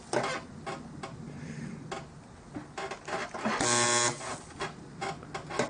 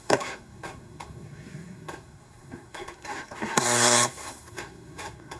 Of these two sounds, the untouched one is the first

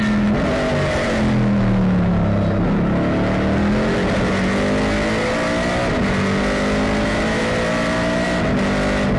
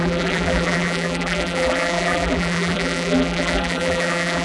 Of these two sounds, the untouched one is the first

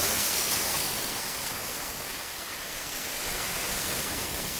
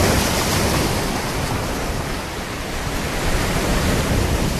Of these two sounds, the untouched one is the second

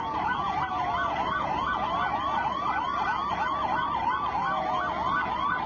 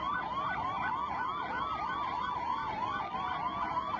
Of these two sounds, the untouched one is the first